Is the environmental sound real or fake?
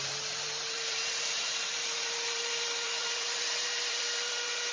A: fake